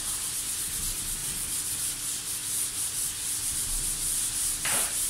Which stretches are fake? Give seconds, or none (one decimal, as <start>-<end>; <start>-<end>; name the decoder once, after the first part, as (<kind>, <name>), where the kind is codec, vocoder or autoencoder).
none

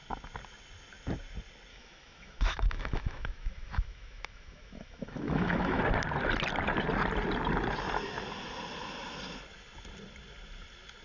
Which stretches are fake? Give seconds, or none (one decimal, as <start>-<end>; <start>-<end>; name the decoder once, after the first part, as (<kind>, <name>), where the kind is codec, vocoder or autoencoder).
1.7-5.8 (autoencoder, DAC-VAE)

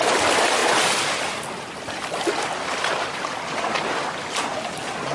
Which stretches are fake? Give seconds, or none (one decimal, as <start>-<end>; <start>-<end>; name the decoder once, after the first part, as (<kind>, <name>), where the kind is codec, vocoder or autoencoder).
none

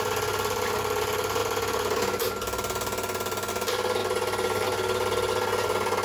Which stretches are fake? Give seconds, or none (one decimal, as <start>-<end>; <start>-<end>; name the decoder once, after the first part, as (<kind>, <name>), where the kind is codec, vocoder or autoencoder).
none

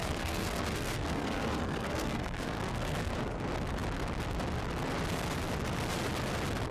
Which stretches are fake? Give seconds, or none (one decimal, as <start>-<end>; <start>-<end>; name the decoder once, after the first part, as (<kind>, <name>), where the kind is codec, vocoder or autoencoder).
0.0-3.1 (codec, SNAC)

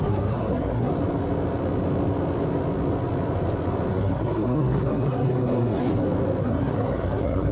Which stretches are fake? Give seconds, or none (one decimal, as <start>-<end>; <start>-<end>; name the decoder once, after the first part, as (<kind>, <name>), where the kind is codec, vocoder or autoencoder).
0.0-0.9 (codec, SNAC); 3.9-5.9; 6.4-7.5

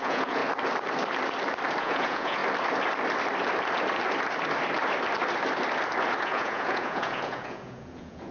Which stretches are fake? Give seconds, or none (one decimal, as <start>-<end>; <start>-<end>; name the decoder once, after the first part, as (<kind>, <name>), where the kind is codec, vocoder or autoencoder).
0.0-0.4 (vocoder, Vocos); 1.8-2.4; 6.2-8.3

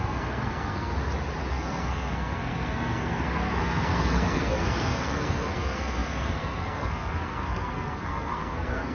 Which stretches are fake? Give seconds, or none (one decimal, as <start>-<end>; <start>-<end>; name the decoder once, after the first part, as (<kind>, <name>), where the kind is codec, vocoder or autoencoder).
0.0-0.9 (codec, SNAC); 1.5-8.9